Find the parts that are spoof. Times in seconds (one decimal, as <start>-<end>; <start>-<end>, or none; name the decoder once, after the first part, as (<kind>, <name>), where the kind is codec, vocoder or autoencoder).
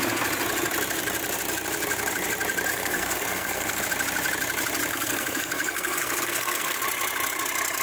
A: 2.7-3.8 (codec, SNAC); 4.9-6.8